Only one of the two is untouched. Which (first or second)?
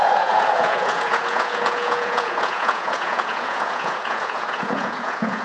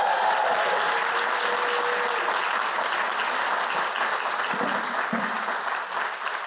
second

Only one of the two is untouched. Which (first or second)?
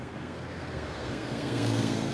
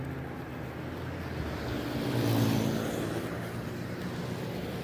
second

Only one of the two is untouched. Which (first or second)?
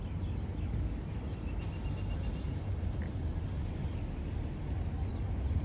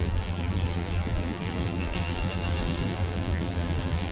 first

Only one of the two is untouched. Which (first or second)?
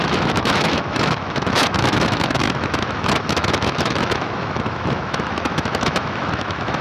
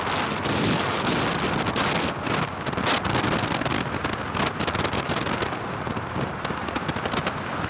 second